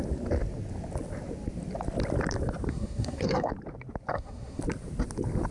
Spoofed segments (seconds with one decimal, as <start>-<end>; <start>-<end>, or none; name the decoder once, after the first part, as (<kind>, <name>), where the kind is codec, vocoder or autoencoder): 2.7-3.5 (codec, SNAC); 4.1-4.6